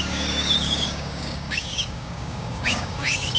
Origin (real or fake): fake